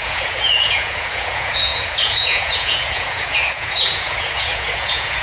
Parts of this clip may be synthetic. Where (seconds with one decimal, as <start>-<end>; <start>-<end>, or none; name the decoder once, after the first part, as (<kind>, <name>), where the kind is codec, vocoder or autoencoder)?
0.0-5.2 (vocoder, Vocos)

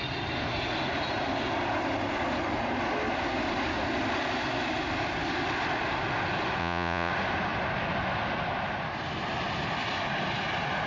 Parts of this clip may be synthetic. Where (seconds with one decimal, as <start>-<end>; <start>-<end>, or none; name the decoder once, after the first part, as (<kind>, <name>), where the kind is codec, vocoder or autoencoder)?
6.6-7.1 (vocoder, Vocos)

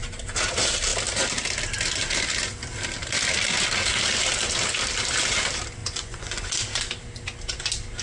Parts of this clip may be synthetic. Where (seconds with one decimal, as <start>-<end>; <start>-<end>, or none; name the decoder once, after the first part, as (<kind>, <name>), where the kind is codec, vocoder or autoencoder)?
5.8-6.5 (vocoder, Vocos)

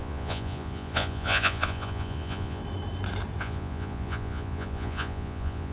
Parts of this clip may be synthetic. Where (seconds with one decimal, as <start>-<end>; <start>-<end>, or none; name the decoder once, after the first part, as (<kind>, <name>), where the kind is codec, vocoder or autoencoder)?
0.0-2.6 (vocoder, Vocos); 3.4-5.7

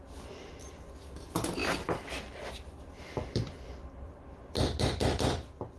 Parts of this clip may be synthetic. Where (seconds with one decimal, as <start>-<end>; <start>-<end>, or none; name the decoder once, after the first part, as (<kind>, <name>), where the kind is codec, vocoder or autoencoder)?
none

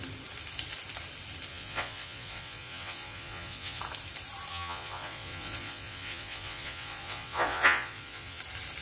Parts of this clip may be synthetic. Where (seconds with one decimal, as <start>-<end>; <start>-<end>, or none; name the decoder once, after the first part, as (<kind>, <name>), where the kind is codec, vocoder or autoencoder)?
1.5-3.8 (vocoder, Vocos); 4.5-8.4

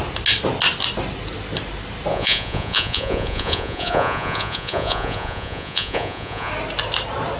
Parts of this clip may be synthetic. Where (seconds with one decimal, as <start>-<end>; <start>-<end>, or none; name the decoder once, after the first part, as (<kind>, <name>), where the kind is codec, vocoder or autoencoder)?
2.1-6.5 (vocoder, Vocos)

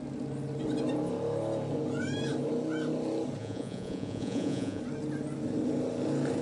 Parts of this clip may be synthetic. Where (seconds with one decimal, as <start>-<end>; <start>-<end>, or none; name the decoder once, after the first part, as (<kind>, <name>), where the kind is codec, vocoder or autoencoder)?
3.4-4.8 (vocoder, Vocos)